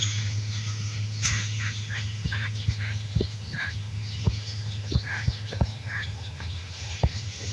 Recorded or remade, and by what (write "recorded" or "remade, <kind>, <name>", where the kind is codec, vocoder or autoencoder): remade, autoencoder, DAC-VAE